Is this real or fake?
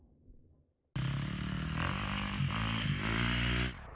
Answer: real